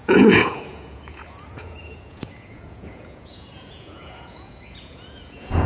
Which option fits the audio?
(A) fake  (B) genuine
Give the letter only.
A